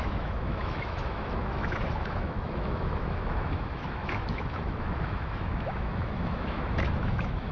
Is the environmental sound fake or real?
fake